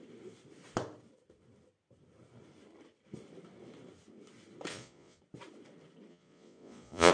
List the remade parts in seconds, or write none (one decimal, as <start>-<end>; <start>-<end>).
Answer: 4.7-5.2; 6.1-7.1